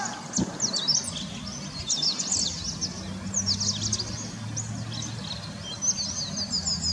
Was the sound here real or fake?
real